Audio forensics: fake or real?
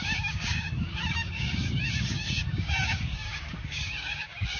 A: fake